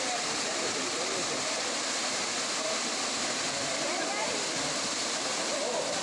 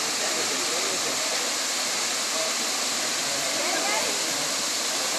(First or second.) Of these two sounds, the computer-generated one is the first